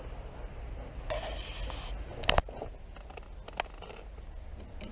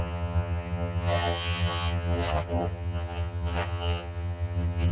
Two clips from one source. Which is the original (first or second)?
first